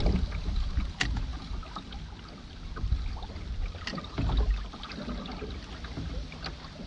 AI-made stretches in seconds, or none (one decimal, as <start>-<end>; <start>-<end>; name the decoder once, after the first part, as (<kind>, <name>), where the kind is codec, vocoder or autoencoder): none